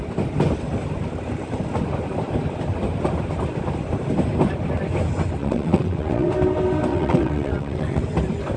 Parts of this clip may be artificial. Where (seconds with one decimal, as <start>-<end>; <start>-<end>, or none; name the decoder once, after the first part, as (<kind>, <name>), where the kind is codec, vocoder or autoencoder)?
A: 5.4-6.3 (vocoder, WaveNeXt); 6.9-8.0